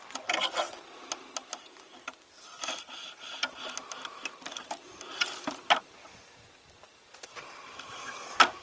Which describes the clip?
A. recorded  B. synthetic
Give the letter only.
A